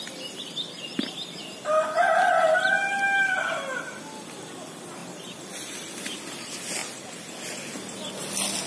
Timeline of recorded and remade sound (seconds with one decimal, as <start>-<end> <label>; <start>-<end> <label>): 0.0-8.7 recorded